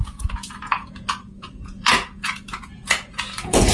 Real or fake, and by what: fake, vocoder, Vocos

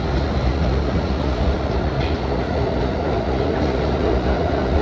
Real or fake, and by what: fake, vocoder, Vocos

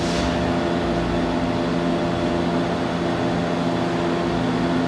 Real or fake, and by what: real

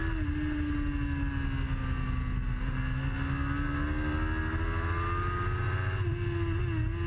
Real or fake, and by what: real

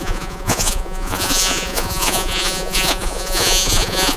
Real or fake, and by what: fake, vocoder, Vocos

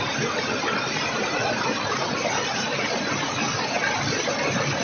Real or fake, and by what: real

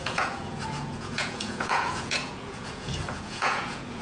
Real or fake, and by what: fake, vocoder, Vocos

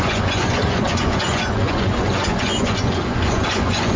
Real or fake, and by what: fake, vocoder, Vocos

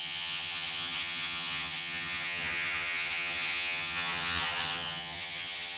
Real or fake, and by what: fake, vocoder, HiFi-GAN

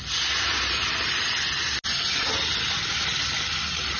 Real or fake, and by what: real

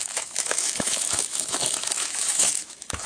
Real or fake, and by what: fake, autoencoder, DAC-VAE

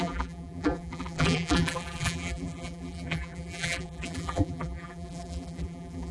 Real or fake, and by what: fake, vocoder, BigVGAN v2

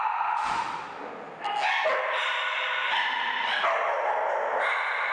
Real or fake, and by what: real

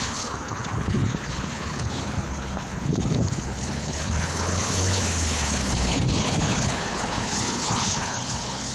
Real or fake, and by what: fake, codec, HILCodec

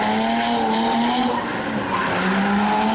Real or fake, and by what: real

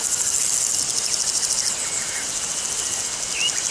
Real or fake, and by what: real